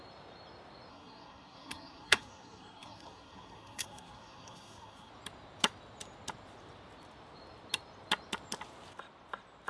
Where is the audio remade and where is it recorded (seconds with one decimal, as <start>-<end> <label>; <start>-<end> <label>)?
0.0-0.9 recorded; 0.9-5.1 remade; 5.1-9.7 recorded